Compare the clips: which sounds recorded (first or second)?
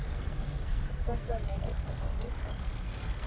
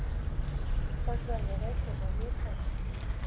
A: second